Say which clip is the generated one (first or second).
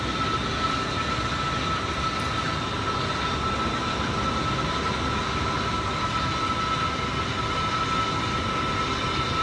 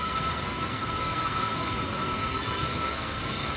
second